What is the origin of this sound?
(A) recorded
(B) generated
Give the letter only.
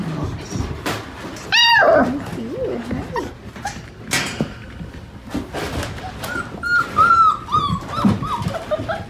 A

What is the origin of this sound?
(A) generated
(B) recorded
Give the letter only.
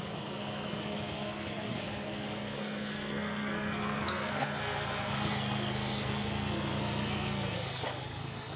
A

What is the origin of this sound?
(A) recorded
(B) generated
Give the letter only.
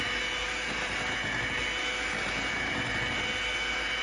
A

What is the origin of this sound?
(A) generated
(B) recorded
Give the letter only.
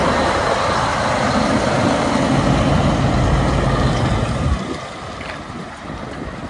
B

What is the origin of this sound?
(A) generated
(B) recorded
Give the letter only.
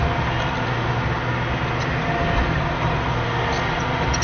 B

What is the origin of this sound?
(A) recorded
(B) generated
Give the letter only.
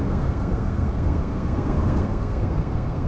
B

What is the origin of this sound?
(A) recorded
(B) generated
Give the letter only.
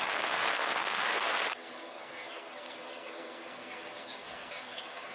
B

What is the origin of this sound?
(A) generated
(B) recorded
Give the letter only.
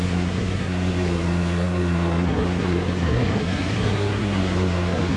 A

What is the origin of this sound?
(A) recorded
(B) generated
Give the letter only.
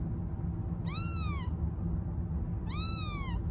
A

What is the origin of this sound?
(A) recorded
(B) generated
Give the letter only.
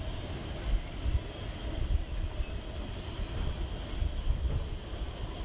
A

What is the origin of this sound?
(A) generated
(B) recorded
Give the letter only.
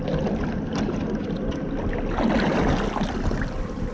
B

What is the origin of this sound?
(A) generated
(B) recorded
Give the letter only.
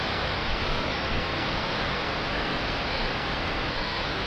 A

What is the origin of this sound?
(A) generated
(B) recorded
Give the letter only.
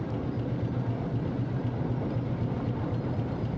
B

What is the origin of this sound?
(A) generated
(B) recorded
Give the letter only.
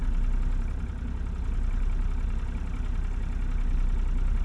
B